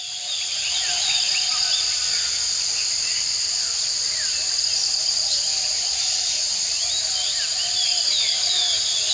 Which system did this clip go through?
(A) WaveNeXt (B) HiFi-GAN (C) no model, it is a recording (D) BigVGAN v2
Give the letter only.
C